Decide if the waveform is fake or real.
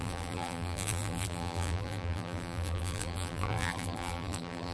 fake